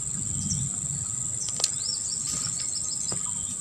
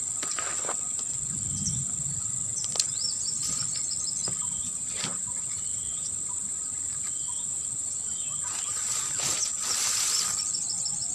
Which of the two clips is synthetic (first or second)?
second